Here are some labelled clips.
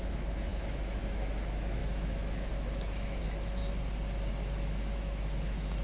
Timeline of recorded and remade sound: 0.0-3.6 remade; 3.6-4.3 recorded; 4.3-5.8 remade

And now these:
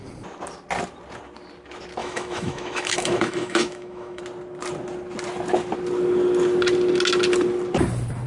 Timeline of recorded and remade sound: 0.0-2.0 recorded; 2.0-4.2 remade; 4.2-8.3 recorded